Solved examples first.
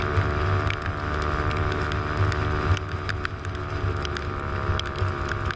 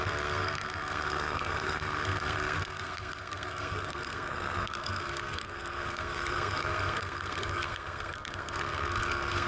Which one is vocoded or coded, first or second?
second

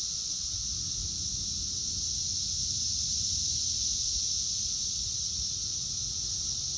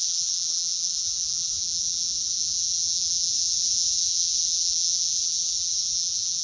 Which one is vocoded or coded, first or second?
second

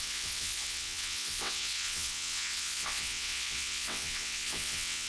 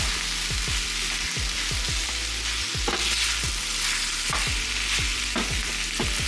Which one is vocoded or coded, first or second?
first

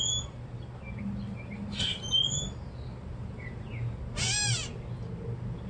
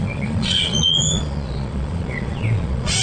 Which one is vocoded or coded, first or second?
second